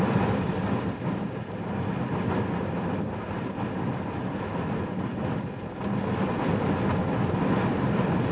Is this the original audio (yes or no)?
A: yes